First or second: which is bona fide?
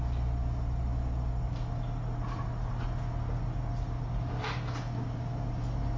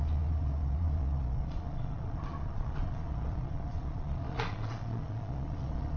first